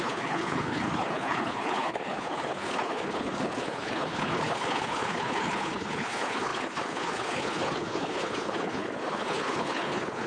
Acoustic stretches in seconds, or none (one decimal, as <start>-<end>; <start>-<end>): none